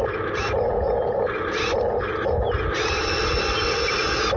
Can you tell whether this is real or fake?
real